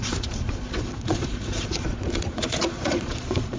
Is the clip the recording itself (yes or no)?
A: no